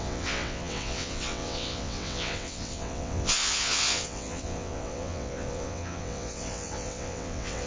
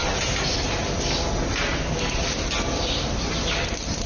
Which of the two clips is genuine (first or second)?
second